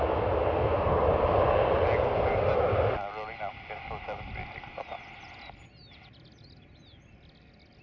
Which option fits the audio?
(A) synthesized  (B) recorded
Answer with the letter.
B